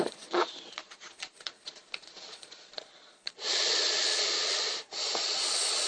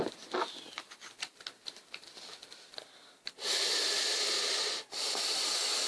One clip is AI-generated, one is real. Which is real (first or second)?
second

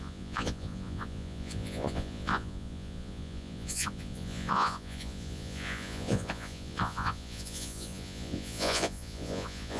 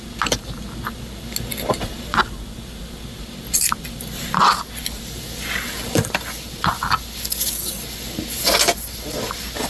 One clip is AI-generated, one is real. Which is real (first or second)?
second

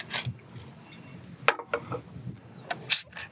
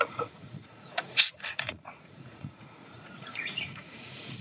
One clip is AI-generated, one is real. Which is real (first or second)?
first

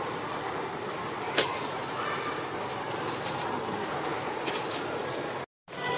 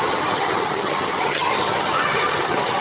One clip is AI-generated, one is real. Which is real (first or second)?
first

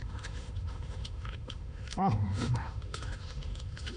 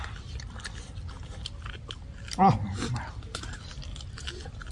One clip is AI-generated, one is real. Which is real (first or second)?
second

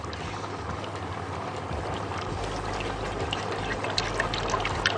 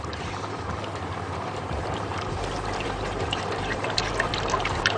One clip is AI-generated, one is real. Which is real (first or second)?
first